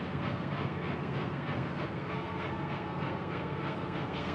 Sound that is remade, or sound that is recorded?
remade